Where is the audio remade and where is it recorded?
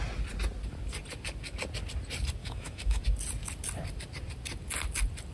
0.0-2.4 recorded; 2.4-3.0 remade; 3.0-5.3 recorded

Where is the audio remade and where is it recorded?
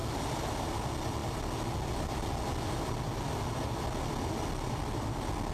0.0-5.5 recorded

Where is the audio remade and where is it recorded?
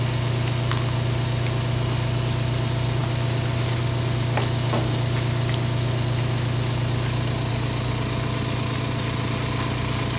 0.0-10.2 recorded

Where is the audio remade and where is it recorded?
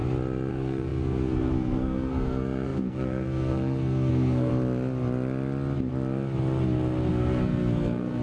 0.0-0.5 recorded; 0.5-4.5 remade; 4.5-7.1 recorded; 7.1-8.2 remade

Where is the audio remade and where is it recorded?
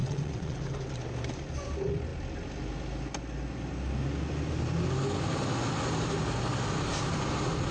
0.0-0.6 remade; 0.6-7.7 recorded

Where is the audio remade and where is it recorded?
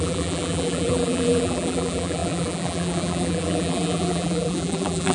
0.0-5.1 remade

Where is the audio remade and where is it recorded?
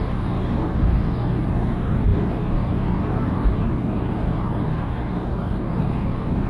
0.0-6.5 remade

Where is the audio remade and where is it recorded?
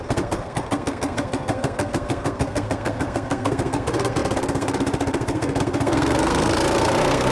0.0-7.3 remade